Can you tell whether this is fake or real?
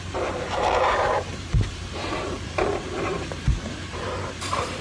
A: fake